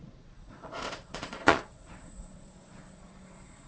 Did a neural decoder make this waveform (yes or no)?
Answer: yes